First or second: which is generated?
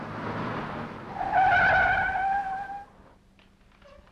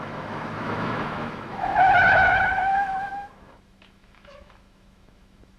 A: second